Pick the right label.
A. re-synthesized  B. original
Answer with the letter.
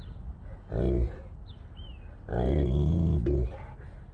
B